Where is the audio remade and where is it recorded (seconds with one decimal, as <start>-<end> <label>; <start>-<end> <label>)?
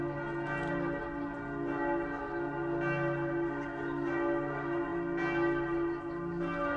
0.0-6.8 recorded